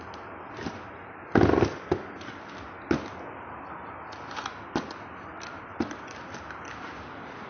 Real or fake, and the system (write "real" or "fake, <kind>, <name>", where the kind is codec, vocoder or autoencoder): real